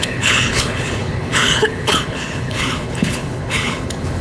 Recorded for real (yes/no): no